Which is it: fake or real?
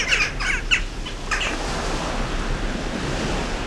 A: real